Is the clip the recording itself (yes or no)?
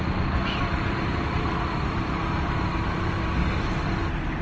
yes